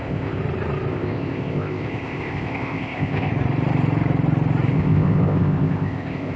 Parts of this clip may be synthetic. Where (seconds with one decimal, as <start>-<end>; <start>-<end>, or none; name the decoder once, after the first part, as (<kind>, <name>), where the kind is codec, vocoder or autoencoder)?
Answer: 0.0-0.4 (codec, ZipCodec); 0.9-3.3; 4.7-6.4